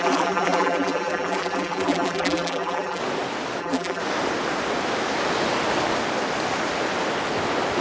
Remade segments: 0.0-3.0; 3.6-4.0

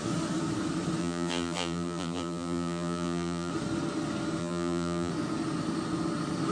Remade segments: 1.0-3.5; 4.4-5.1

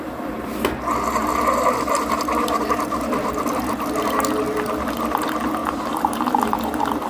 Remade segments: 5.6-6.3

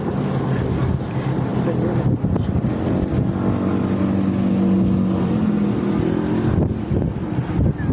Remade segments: none